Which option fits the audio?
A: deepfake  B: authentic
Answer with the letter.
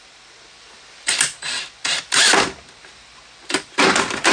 B